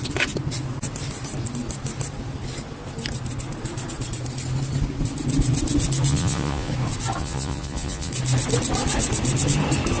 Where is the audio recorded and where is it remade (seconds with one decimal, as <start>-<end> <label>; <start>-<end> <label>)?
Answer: 0.0-6.1 recorded; 6.1-6.7 remade; 6.7-7.2 recorded; 7.2-8.1 remade; 8.1-10.0 recorded